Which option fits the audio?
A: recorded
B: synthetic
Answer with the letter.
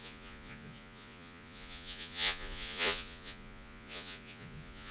B